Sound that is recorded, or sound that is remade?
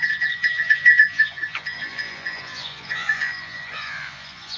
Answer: remade